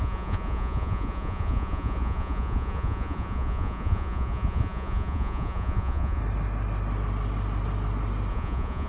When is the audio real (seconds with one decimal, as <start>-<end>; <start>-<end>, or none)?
6.2-8.3